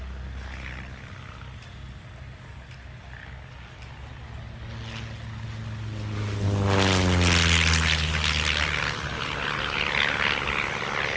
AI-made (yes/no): no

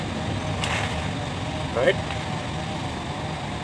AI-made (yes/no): no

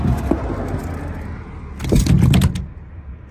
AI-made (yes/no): no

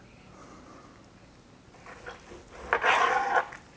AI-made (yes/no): no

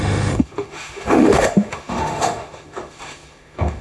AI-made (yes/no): yes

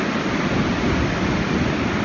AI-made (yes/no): no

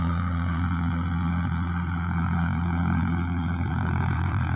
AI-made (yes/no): yes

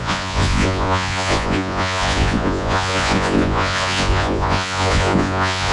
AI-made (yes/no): yes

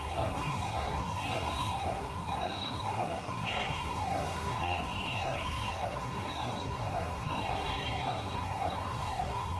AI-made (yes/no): yes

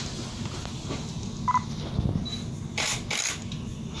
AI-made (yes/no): no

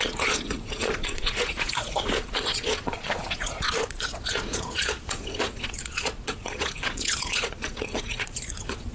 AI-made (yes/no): yes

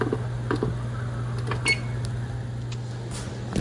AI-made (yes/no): no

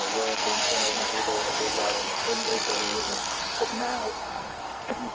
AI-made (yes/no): yes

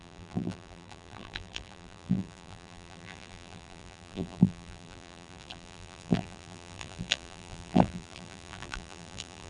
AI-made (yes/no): yes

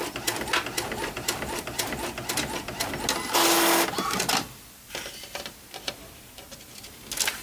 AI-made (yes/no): no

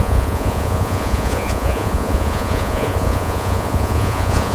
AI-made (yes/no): yes